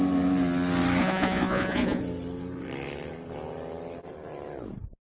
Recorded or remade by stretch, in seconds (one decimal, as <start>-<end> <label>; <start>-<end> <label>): 0.0-1.0 recorded; 1.0-2.0 remade; 2.0-5.2 recorded